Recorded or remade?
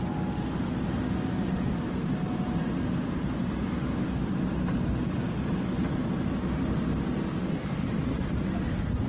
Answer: recorded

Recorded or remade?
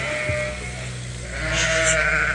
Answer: recorded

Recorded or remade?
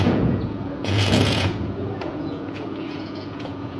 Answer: remade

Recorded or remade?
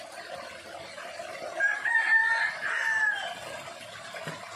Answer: recorded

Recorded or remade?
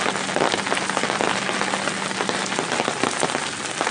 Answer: recorded